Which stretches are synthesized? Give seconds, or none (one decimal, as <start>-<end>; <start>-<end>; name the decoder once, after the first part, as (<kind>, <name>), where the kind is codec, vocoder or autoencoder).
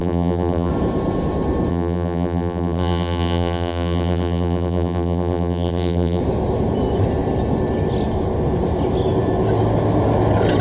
0.0-0.7 (vocoder, BigVGAN v2); 1.7-6.2